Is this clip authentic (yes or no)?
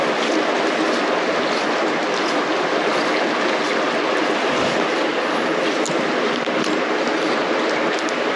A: yes